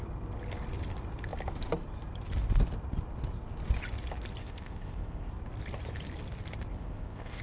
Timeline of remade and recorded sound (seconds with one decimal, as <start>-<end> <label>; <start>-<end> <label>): 0.0-4.4 recorded; 4.4-5.3 remade; 5.3-6.7 recorded; 6.7-7.4 remade